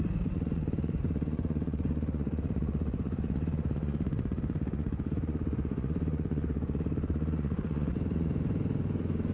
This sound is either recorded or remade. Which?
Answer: remade